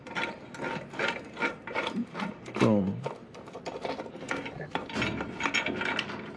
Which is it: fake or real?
real